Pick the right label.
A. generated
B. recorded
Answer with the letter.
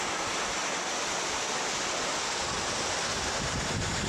B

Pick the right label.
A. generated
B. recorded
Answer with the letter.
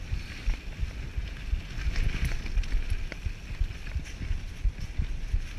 B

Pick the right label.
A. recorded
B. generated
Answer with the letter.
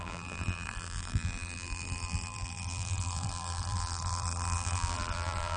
B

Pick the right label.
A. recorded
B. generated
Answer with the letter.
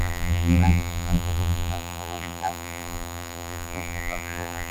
B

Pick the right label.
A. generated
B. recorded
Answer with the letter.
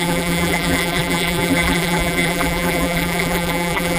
A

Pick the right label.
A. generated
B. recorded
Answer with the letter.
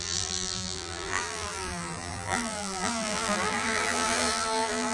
A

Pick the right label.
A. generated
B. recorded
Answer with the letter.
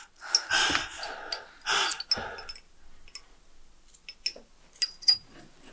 B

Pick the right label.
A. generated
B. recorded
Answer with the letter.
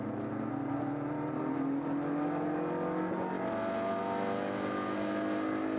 B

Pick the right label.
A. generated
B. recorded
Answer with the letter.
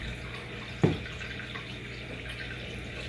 B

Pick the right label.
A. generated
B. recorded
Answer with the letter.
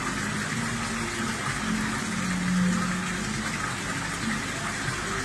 B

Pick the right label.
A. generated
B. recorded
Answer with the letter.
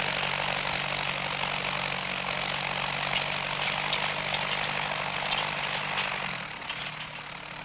B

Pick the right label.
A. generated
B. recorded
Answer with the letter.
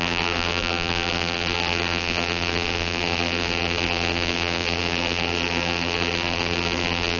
A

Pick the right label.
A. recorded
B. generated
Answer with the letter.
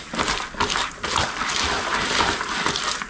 A